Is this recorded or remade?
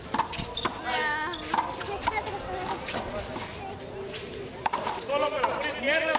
recorded